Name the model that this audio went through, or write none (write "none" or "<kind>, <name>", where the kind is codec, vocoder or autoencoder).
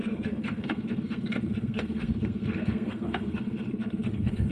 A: codec, SNAC